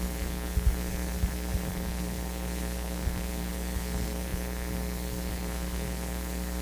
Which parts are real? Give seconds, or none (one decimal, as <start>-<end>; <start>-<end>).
none